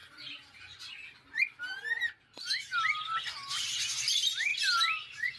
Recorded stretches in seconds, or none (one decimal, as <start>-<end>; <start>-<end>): 0.0-5.4